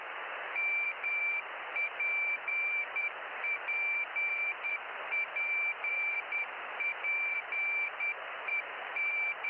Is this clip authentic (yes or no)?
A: no